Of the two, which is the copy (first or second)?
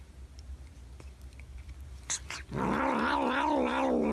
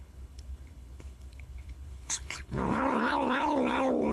second